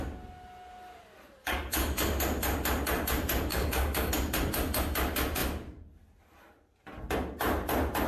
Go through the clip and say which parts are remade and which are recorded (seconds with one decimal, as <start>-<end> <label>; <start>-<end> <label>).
0.0-1.4 recorded; 1.4-2.2 remade; 2.2-3.5 recorded; 3.5-4.1 remade; 4.1-8.1 recorded